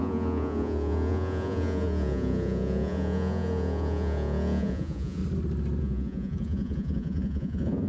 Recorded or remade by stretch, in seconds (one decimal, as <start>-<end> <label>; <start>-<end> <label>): 0.0-5.2 remade; 5.2-5.8 recorded; 5.8-7.9 remade